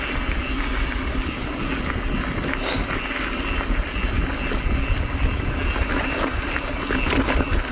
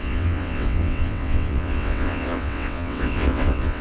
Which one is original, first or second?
first